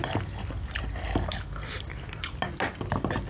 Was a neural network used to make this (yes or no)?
no